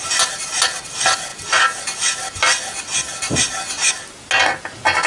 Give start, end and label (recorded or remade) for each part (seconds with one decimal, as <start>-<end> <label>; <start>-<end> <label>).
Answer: 0.0-5.1 recorded